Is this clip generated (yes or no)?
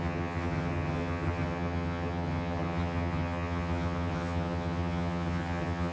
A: yes